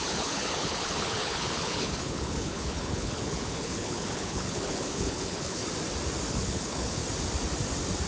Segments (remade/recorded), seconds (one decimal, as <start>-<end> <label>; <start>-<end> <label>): 0.0-5.6 remade; 5.6-6.3 recorded; 6.3-7.0 remade; 7.0-8.1 recorded